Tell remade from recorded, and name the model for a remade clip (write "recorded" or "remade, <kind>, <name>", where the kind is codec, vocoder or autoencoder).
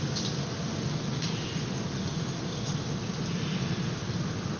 recorded